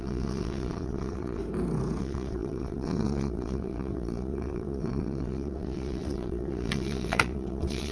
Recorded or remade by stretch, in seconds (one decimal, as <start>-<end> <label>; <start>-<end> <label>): 0.0-1.4 remade; 1.4-2.0 recorded; 2.0-7.9 remade

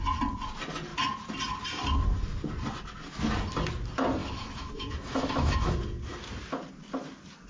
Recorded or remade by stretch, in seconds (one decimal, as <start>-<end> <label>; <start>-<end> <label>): 0.0-4.2 recorded; 4.2-5.7 remade; 5.7-7.5 recorded

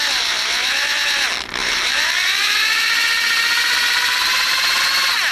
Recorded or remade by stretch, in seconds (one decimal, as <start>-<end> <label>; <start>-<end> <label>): 0.0-1.6 recorded; 1.6-4.8 remade; 4.8-5.3 recorded

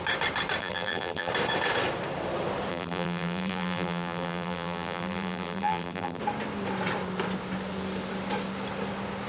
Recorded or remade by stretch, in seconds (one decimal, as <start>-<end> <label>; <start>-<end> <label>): 0.0-0.6 recorded; 0.6-1.3 remade; 1.3-2.7 recorded; 2.7-6.2 remade; 6.2-9.3 recorded